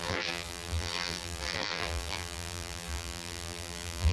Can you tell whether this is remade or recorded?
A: remade